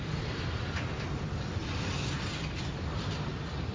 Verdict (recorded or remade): recorded